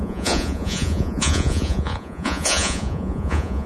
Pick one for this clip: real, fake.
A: fake